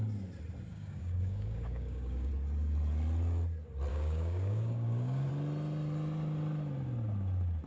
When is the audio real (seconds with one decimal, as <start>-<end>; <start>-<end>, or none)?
0.0-0.7; 2.3-3.9; 5.3-7.7